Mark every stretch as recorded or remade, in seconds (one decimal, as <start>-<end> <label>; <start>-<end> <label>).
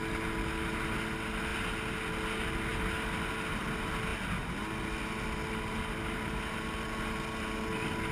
0.0-8.1 recorded